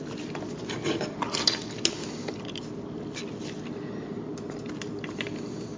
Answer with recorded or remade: recorded